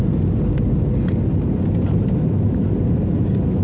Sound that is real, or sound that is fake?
real